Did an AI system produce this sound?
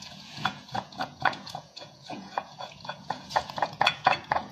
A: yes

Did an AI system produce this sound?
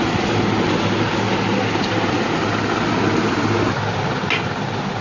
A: no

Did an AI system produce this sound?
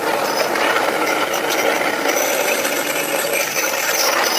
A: no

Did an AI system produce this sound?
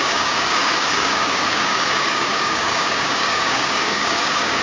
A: yes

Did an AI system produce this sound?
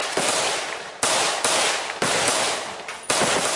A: no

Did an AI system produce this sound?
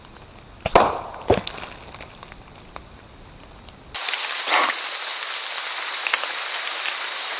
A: no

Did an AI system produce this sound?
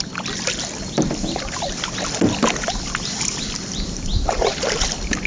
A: no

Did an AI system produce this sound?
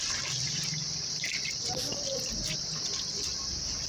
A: yes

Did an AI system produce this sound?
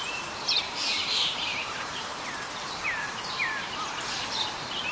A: yes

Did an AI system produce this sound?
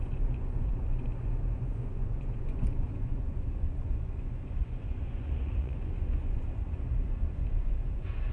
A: yes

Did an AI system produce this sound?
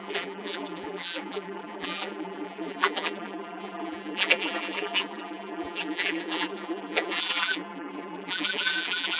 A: yes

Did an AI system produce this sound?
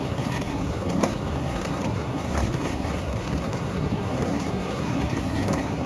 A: yes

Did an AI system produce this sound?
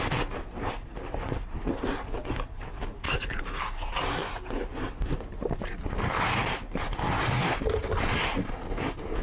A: no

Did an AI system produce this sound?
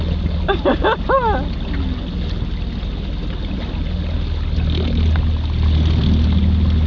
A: no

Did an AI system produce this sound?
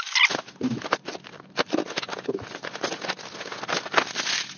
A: no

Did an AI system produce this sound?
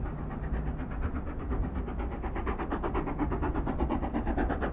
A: no